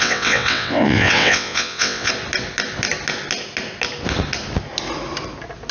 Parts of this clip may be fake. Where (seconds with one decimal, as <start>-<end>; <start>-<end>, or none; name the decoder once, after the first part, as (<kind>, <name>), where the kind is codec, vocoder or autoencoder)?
0.0-2.1 (vocoder, WaveNeXt)